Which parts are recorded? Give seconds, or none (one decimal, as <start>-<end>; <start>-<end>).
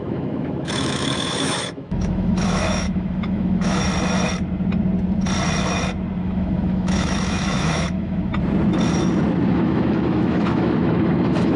3.9-6.2; 8.3-9.5